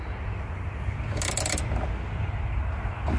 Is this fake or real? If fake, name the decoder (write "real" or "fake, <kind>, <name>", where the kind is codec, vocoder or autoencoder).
real